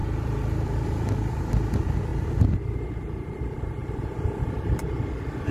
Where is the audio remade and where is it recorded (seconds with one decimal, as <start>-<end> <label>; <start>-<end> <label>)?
0.0-1.5 remade; 1.5-2.1 recorded; 2.1-3.4 remade; 3.4-5.5 recorded